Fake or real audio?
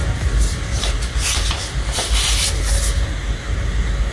real